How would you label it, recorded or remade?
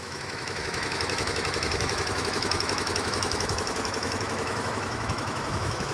remade